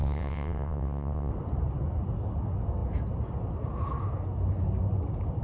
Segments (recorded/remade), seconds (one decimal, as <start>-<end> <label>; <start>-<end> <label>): 0.0-1.3 remade; 1.3-5.4 recorded